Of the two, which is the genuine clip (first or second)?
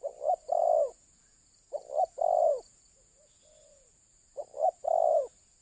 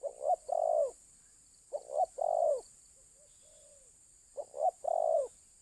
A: second